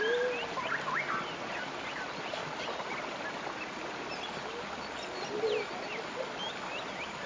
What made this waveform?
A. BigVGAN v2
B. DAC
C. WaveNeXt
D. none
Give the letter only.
D